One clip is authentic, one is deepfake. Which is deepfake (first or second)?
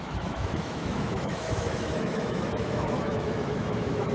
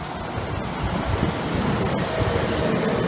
first